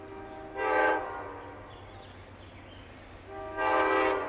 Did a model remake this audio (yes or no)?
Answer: no